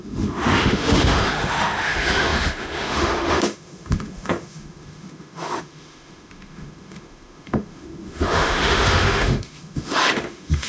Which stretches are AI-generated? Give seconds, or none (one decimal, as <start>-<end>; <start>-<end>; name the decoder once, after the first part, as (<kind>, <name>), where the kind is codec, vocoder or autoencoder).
0.0-10.7 (autoencoder, DAC-VAE)